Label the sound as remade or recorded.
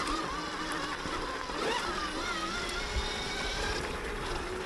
recorded